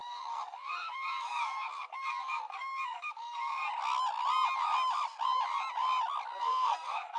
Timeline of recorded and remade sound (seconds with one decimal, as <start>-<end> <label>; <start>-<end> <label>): 0.0-3.7 remade; 3.7-6.4 recorded; 6.4-7.2 remade